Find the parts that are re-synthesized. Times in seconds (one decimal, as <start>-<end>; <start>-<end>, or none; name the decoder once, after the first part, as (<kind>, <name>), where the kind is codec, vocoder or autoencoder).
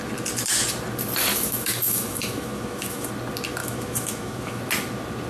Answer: 1.3-3.1 (autoencoder, DAC-VAE); 3.6-4.6